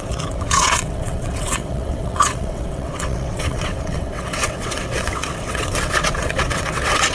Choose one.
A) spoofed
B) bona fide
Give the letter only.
A